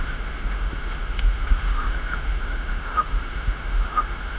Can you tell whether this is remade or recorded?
remade